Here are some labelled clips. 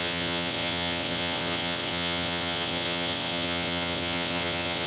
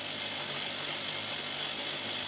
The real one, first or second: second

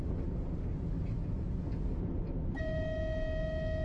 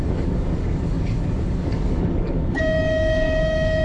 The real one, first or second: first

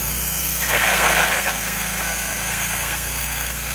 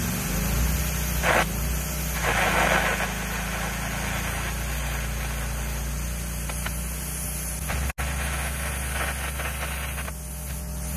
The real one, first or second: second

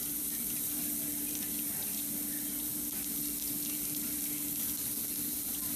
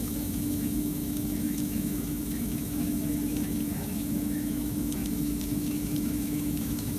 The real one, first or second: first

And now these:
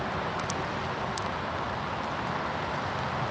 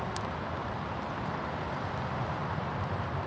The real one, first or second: first